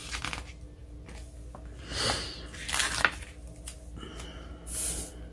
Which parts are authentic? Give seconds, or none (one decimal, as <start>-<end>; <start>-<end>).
0.0-5.3